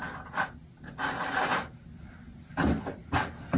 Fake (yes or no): no